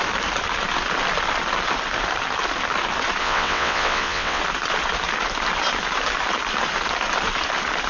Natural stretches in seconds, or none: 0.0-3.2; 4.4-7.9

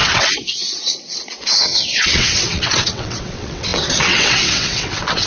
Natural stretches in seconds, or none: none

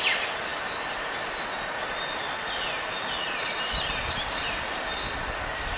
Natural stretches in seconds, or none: 0.0-5.8